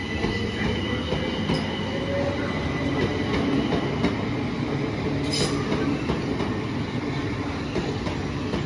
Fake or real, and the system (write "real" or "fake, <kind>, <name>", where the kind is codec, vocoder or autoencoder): real